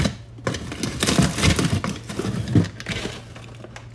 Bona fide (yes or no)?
yes